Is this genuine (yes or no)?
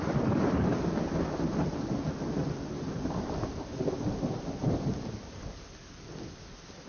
yes